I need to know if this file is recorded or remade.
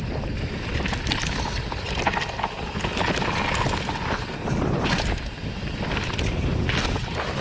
recorded